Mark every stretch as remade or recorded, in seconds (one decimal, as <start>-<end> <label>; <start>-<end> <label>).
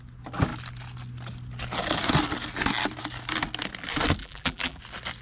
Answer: 0.0-4.2 recorded; 4.2-4.8 remade; 4.8-5.2 recorded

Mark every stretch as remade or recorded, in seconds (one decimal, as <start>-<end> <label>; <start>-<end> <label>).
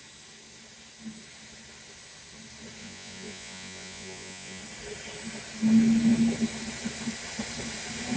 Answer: 0.0-2.8 recorded; 2.8-4.6 remade; 4.6-8.2 recorded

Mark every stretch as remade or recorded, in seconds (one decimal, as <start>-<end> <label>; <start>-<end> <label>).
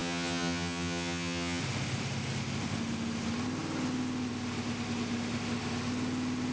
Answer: 0.0-1.6 remade; 1.6-6.5 recorded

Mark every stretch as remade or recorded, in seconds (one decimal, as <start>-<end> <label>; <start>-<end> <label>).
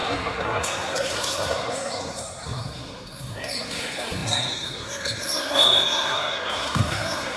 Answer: 0.0-7.4 remade